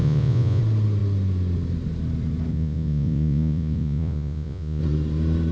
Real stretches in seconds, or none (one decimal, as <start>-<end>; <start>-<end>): 0.6-2.5; 4.8-5.5